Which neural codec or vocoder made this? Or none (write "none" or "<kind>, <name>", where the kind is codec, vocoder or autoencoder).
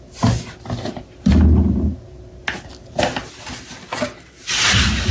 none